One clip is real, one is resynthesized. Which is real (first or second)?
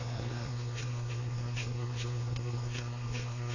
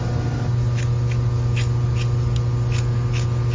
second